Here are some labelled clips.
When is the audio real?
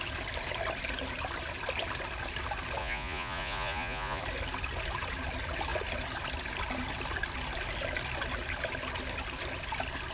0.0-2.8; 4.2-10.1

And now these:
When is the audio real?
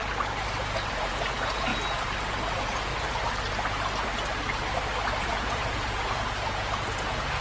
0.0-0.9; 1.7-2.5; 2.9-5.1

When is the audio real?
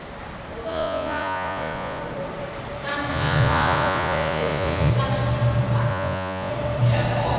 0.0-0.7; 2.0-3.1; 4.9-5.9; 6.5-7.4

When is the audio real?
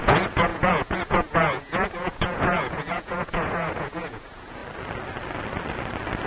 4.6-6.3